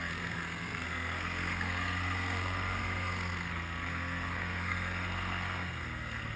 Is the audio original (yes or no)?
no